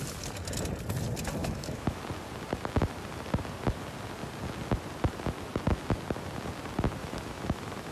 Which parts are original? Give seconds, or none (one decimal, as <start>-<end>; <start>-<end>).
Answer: 0.0-1.4; 2.0-7.0